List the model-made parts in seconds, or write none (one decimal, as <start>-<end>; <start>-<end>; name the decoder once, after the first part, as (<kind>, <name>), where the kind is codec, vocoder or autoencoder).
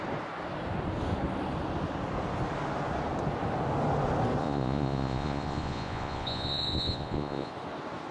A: 4.4-7.5 (vocoder, Vocos)